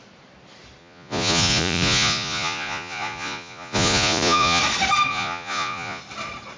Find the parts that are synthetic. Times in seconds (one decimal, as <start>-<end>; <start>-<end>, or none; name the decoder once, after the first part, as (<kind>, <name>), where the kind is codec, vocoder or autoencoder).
0.8-4.6 (vocoder, Vocos); 5.1-6.0